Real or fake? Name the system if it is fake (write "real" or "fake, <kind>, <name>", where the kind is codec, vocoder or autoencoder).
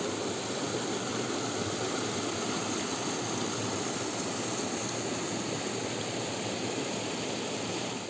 real